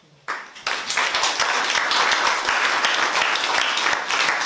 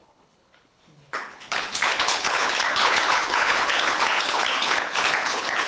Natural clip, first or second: first